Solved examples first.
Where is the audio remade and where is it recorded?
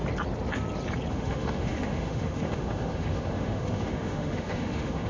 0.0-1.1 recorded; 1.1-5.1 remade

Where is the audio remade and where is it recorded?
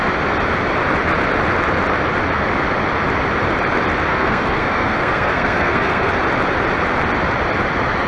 0.0-4.1 recorded; 4.1-6.1 remade; 6.1-8.1 recorded